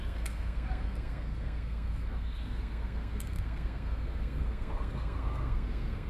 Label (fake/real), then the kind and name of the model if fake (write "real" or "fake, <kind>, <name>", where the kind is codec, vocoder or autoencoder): fake, codec, SNAC